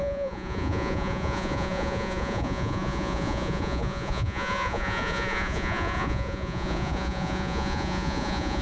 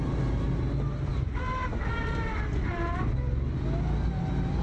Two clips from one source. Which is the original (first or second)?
second